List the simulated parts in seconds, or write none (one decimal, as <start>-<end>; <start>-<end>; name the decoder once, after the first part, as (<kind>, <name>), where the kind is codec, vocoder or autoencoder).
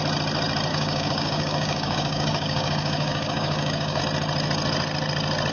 0.7-4.0 (codec, DAC)